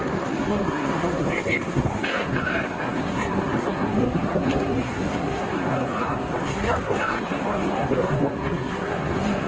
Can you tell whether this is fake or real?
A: fake